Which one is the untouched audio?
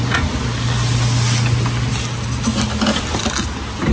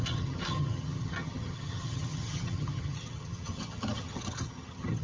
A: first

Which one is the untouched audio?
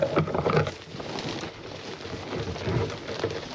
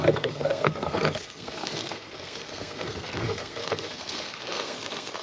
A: first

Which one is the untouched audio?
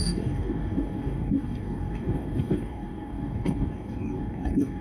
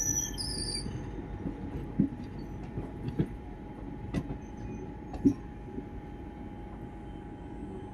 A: second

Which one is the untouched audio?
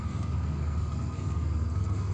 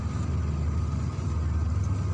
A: second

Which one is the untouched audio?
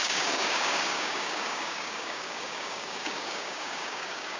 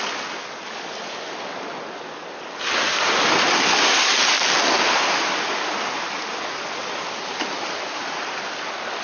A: second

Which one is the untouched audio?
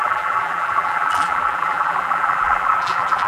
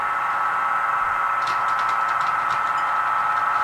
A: second